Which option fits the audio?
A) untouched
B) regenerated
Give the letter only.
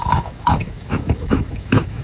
B